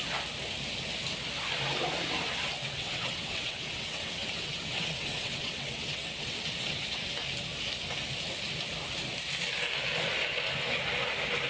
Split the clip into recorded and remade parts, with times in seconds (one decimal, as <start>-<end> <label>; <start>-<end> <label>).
0.0-2.6 recorded; 2.6-7.1 remade; 7.1-11.5 recorded